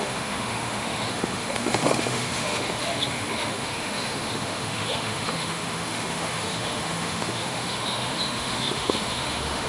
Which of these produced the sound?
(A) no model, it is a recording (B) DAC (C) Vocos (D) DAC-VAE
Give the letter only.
D